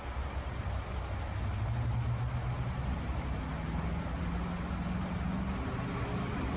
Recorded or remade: recorded